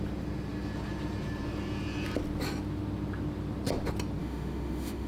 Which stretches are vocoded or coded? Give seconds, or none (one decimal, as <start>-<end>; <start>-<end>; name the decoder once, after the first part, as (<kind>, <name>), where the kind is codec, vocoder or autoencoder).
4.2-5.1 (autoencoder, DAC-VAE)